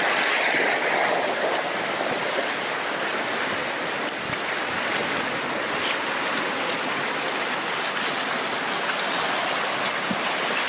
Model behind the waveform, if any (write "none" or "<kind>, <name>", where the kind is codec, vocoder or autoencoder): none